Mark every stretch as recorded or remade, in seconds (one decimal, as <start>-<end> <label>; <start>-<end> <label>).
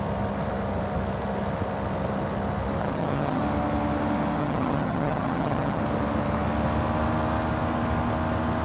0.0-2.8 recorded; 2.8-3.4 remade; 3.4-4.4 recorded; 4.4-5.8 remade; 5.8-8.6 recorded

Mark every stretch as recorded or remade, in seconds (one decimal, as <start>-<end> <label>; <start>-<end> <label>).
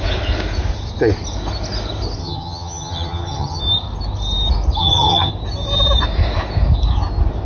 0.0-2.2 recorded; 2.2-3.6 remade; 3.6-4.8 recorded; 4.8-5.3 remade; 5.3-7.5 recorded